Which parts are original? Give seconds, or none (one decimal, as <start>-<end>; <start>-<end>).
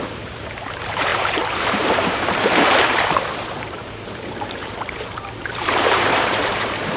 none